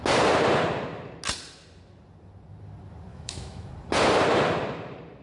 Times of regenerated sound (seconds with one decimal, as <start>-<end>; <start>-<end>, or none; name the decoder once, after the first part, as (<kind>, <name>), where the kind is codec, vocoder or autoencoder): 3.1-3.7 (autoencoder, DAC-VAE)